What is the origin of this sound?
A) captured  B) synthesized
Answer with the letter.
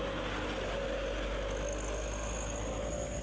A